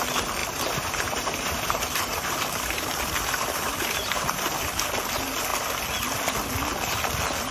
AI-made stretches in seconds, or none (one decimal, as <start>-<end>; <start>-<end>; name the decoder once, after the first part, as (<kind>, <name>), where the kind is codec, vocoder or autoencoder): 0.4-4.9 (vocoder, BigVGAN v2)